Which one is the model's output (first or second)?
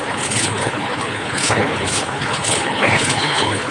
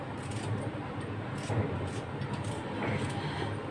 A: first